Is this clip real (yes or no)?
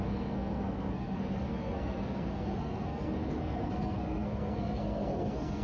no